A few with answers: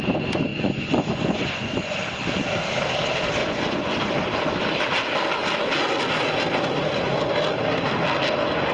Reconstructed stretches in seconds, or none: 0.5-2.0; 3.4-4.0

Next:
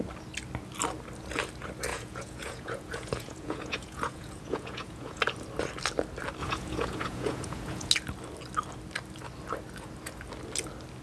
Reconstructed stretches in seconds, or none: 1.9-5.2; 6.4-7.9

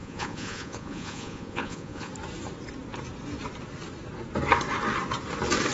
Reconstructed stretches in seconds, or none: 0.0-2.1

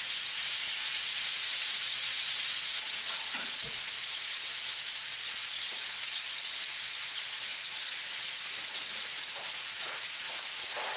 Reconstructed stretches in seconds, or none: 0.0-11.0

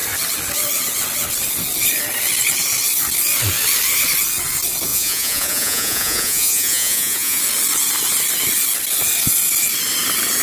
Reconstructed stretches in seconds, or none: 4.9-7.4

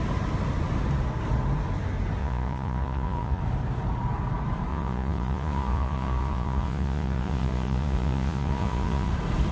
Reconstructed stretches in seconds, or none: 2.2-3.4; 4.7-9.1